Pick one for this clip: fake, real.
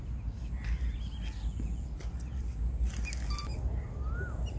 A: real